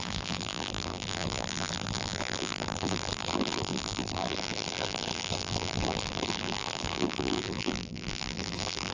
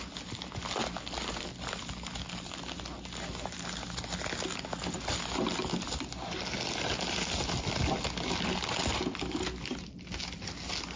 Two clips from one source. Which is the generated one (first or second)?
first